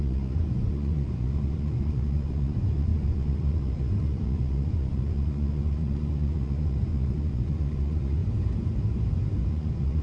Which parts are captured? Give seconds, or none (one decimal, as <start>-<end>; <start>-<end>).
8.2-9.5